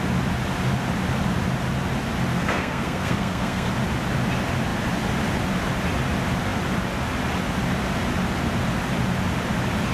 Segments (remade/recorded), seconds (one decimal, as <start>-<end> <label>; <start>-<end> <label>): 0.0-2.3 recorded; 2.3-3.7 remade; 3.7-9.9 recorded